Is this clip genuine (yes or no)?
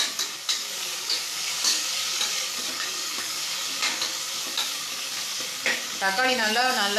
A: no